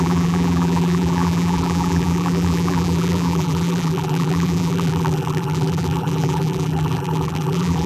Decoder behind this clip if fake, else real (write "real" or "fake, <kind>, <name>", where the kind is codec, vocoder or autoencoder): fake, vocoder, BigVGAN v2